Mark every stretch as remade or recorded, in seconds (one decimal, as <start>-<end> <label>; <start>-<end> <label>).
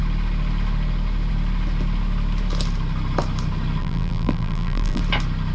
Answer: 0.0-3.8 recorded; 3.8-5.0 remade; 5.0-5.5 recorded